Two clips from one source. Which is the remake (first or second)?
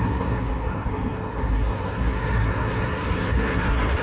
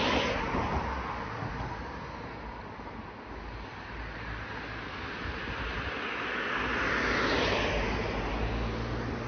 first